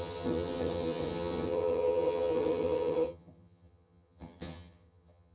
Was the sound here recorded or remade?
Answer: remade